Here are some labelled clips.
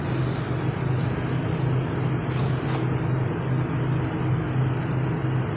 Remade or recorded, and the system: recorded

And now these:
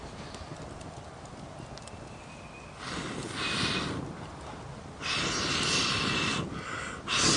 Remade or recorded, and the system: recorded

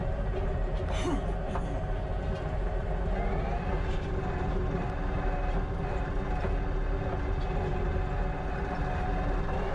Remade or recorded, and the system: recorded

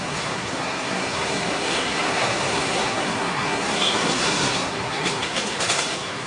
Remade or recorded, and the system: remade, codec, SNAC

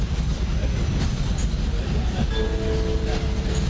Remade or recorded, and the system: recorded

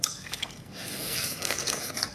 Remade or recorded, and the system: remade, codec, SNAC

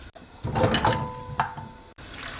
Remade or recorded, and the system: recorded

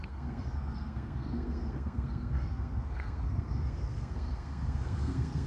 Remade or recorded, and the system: remade, codec, SNAC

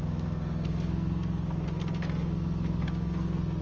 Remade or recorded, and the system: remade, codec, SNAC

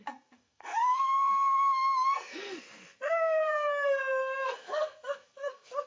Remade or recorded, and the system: remade, codec, SNAC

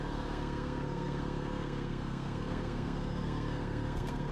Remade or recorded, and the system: remade, codec, SNAC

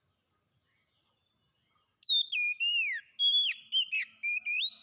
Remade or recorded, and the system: recorded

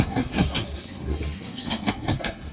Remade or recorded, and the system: remade, codec, SNAC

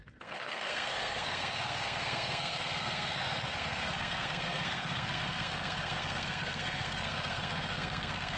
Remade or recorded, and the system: remade, codec, SNAC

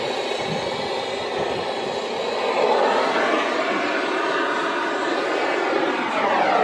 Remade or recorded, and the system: recorded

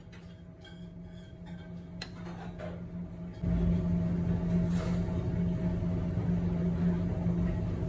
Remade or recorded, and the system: recorded